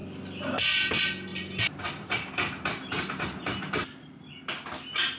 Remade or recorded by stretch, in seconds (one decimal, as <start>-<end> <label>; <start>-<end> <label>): 0.0-1.3 recorded; 1.3-4.4 remade; 4.4-5.2 recorded

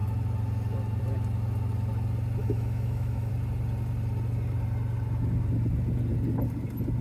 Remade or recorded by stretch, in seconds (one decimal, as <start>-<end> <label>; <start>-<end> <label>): 0.0-2.4 recorded; 2.4-3.3 remade; 3.3-7.0 recorded

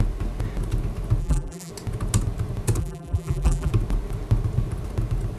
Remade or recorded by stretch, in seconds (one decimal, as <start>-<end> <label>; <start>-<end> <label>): 0.0-1.2 recorded; 1.2-1.7 remade; 1.7-2.8 recorded; 2.8-3.7 remade; 3.7-5.4 recorded

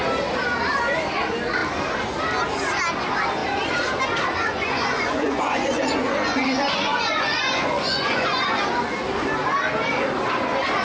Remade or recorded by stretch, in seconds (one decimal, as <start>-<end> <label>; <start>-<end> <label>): 0.0-4.5 recorded; 4.5-8.6 remade; 8.6-10.8 recorded

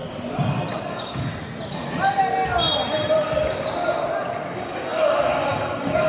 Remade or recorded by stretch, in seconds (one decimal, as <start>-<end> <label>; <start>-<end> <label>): 0.0-0.9 recorded; 0.9-1.3 remade; 1.3-4.5 recorded; 4.5-6.1 remade

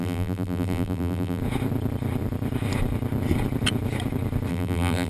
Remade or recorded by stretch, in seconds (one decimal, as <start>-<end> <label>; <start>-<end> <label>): 0.0-1.4 remade; 1.4-4.5 recorded; 4.5-5.1 remade

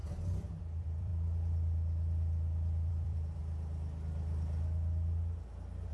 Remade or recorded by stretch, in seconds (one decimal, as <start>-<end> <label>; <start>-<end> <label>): 0.0-0.6 recorded; 0.6-1.1 remade; 1.1-2.9 recorded; 2.9-3.4 remade; 3.4-5.9 recorded